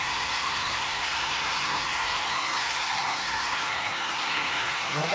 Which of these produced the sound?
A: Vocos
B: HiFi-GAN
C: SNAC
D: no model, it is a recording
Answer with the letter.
C